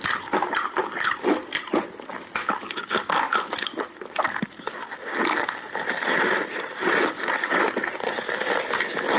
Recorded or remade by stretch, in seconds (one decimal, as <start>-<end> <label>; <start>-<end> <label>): 0.0-9.2 recorded